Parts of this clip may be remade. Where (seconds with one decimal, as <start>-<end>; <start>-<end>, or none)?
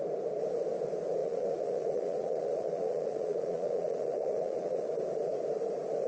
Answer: 1.2-4.9